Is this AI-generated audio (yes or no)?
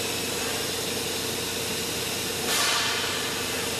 no